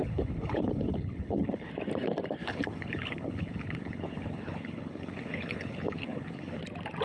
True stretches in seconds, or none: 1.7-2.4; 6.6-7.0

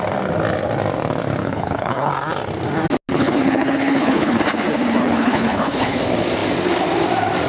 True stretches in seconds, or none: 0.0-1.4; 2.1-3.1; 4.4-5.0; 6.0-7.5

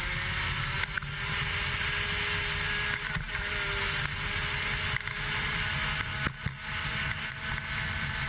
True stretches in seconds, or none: 0.0-8.3

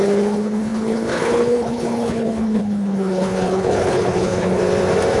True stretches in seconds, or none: 4.6-5.2